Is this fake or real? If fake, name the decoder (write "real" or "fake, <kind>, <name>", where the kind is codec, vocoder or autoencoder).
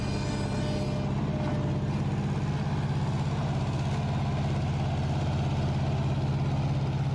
real